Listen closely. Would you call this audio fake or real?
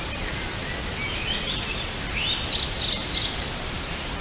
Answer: real